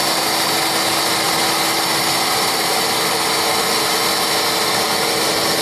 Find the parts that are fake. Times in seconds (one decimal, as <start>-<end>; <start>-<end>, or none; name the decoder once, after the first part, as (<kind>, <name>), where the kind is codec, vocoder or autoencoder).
none